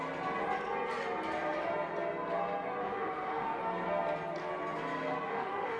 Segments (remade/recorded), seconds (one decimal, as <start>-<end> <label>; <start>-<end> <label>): 0.0-2.8 recorded; 2.8-3.6 remade; 3.6-5.3 recorded; 5.3-5.8 remade